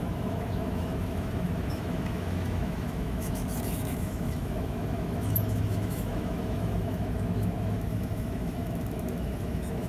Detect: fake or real fake